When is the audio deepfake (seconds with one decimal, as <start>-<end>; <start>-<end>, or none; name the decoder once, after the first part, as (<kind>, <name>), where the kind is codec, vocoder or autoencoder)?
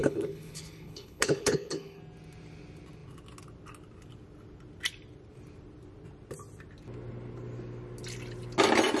0.0-2.0 (codec, HILCodec)